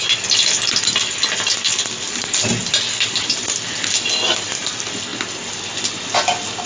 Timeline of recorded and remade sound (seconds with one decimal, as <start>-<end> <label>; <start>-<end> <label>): 0.0-6.7 recorded